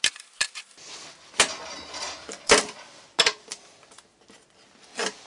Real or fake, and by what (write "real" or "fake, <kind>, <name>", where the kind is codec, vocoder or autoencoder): real